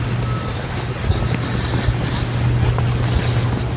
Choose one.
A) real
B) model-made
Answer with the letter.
A